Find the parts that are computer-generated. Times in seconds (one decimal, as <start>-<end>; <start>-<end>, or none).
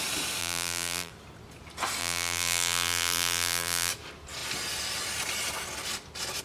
0.4-1.1; 2.0-3.9